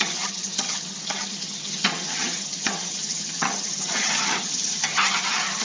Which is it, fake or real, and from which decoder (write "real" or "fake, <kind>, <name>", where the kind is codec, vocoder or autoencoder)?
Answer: fake, vocoder, HiFi-GAN